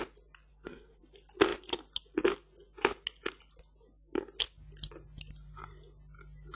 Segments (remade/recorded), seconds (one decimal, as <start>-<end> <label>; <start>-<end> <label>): 0.0-0.5 recorded; 0.5-1.0 remade; 1.0-6.5 recorded